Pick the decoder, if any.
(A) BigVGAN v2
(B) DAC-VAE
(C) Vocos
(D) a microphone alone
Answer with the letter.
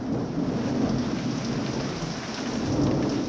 D